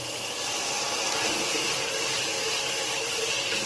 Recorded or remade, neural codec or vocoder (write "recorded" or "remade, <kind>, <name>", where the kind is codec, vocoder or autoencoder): recorded